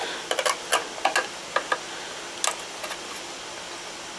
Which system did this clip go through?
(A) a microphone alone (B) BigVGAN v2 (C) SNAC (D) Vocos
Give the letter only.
A